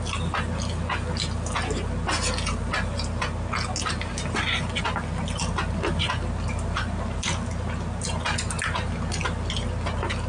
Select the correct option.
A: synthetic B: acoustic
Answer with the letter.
B